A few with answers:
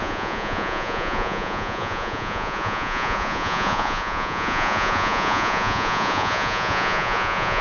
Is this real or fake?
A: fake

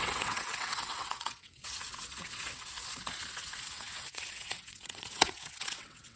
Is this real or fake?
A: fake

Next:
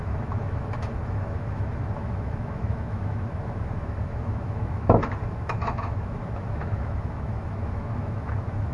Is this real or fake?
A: fake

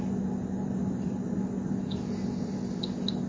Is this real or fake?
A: real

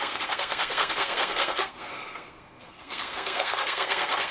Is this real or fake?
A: fake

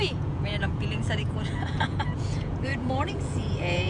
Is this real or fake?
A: fake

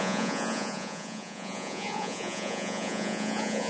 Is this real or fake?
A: fake